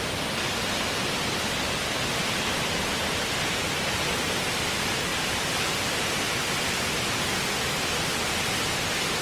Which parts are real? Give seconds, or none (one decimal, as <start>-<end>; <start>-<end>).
0.0-9.2